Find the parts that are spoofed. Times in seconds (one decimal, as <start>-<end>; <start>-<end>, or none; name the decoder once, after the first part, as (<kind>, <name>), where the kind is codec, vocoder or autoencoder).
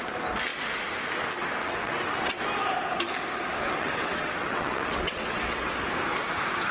1.6-2.4 (vocoder, WaveNeXt); 3.6-5.7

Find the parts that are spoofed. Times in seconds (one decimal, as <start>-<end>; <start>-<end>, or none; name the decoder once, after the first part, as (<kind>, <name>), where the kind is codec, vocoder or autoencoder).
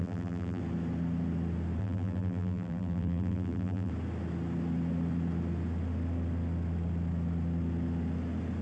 0.0-0.6 (vocoder, BigVGAN v2); 1.8-3.9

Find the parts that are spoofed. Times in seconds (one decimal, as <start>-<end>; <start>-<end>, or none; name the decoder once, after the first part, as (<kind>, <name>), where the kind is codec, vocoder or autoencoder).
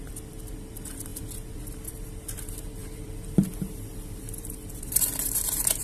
0.0-5.8 (vocoder, BigVGAN v2)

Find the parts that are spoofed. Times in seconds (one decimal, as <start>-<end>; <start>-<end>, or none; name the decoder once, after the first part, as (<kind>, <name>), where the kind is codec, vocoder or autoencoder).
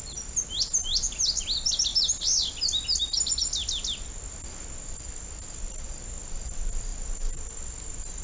none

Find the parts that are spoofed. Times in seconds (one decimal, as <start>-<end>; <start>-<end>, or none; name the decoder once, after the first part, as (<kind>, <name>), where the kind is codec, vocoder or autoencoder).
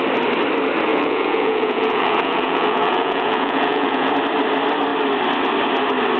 0.9-4.1 (vocoder, Vocos)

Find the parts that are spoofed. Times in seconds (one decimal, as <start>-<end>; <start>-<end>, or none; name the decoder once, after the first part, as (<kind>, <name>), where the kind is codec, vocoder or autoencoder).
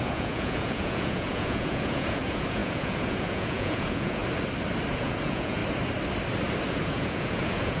0.0-4.2 (vocoder, Vocos); 4.9-5.6; 6.7-7.8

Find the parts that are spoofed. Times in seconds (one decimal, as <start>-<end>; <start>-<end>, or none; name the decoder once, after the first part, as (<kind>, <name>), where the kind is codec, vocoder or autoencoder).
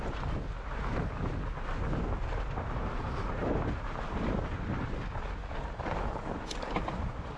none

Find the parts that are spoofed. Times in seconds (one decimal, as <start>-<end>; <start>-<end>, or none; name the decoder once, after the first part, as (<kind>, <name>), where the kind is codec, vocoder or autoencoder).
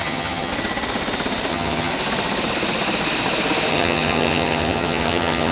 0.0-0.5 (vocoder, HiFi-GAN); 1.5-1.9; 3.7-5.5